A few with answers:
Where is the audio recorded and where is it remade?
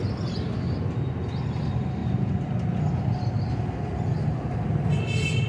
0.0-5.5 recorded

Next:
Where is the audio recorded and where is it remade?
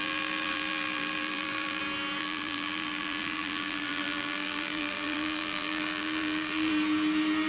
0.0-1.8 remade; 1.8-2.2 recorded; 2.2-6.7 remade; 6.7-7.5 recorded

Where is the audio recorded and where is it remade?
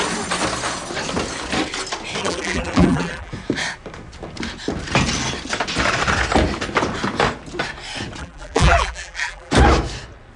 0.0-2.2 recorded; 2.2-3.3 remade; 3.3-8.2 recorded; 8.2-9.5 remade; 9.5-10.4 recorded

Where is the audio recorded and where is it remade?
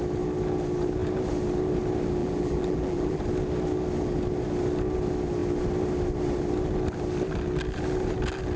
0.0-2.2 recorded; 2.2-3.2 remade; 3.2-8.6 recorded